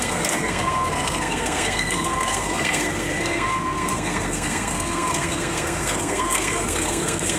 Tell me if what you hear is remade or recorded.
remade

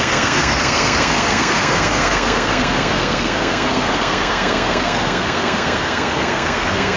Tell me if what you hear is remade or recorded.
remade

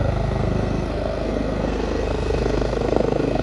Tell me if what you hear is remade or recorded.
remade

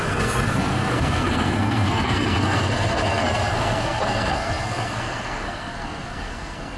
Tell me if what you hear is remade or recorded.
remade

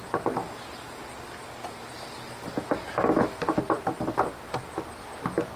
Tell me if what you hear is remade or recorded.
recorded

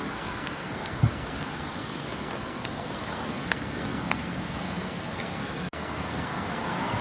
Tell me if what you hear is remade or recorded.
remade